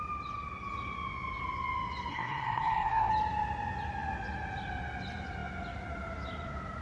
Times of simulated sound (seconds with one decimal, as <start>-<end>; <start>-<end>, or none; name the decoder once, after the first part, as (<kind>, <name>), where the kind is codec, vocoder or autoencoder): 2.1-3.1 (codec, SNAC)